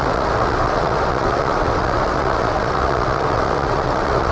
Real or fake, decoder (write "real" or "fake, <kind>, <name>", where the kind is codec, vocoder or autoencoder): fake, vocoder, WaveNeXt